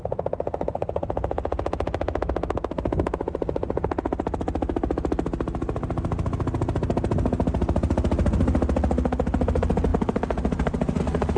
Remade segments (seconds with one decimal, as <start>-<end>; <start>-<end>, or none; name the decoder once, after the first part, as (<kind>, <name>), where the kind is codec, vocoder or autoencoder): 9.9-11.0 (vocoder, BigVGAN v2)